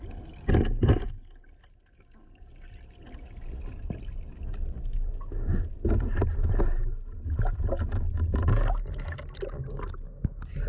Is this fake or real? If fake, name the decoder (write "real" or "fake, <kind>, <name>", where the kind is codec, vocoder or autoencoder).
real